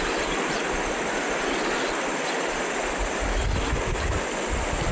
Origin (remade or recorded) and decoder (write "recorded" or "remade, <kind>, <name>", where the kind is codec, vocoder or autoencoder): recorded